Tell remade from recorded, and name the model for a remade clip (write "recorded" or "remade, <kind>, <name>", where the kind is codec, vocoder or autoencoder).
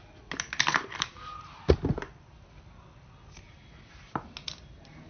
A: recorded